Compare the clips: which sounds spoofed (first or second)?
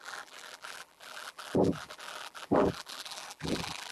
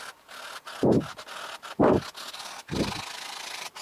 first